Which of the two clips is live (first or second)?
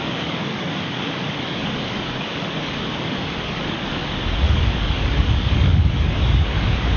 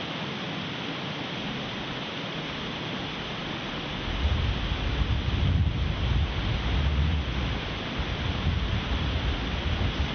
second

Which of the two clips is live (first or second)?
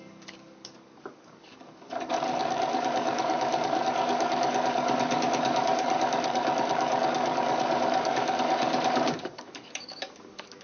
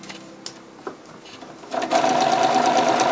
second